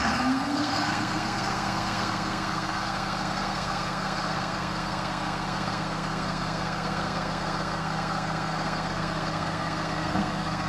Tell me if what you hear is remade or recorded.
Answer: remade